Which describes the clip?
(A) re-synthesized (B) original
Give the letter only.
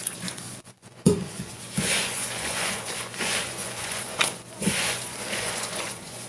A